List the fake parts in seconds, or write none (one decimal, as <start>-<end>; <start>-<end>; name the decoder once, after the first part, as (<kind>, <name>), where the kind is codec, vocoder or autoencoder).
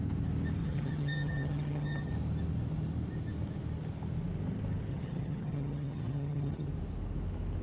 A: 0.6-2.1 (vocoder, HiFi-GAN); 4.9-6.7